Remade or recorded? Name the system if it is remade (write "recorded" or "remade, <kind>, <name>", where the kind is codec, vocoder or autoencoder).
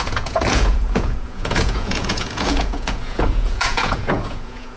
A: remade, vocoder, Vocos